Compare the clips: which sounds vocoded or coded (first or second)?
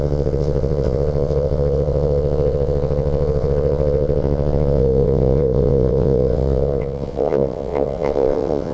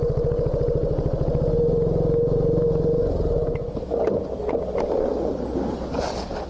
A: first